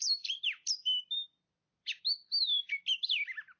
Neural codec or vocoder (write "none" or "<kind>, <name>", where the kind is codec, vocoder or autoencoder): none